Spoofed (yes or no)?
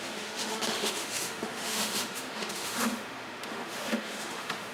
yes